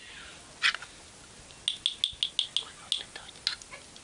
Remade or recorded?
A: recorded